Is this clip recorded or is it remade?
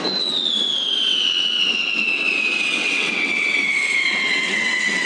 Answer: remade